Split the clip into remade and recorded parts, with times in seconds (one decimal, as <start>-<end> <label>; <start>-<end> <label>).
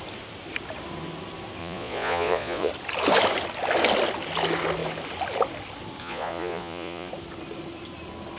0.0-1.6 recorded; 1.6-2.7 remade; 2.7-6.0 recorded; 6.0-7.1 remade; 7.1-8.4 recorded